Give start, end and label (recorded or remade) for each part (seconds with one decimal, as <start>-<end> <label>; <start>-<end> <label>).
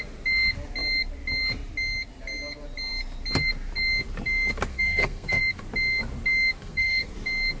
0.0-4.7 recorded; 4.7-5.4 remade; 5.4-6.6 recorded; 6.6-7.1 remade; 7.1-7.6 recorded